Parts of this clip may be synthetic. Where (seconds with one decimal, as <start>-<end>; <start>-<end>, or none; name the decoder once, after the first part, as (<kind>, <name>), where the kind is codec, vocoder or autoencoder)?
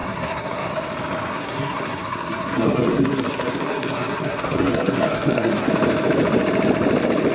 0.0-0.7 (codec, SNAC); 1.3-5.7